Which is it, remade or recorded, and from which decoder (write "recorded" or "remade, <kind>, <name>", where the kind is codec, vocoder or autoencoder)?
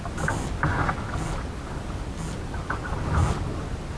recorded